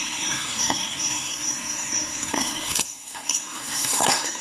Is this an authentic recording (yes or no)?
no